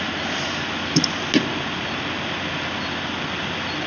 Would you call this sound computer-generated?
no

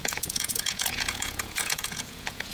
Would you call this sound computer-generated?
yes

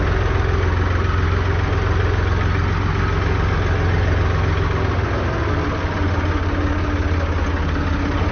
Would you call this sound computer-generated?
no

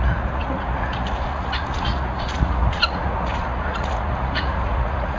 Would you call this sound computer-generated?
yes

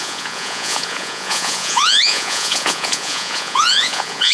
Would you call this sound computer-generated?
yes